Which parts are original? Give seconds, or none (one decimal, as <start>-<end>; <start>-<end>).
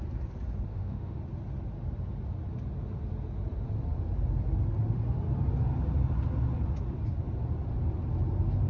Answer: 0.0-0.7; 1.2-8.7